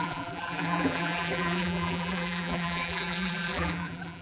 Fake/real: fake